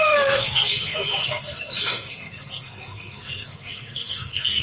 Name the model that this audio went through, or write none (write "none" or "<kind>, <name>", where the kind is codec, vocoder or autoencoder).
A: codec, SNAC